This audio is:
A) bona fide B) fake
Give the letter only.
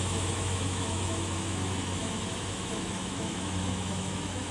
B